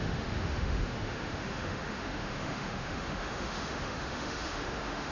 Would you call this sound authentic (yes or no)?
no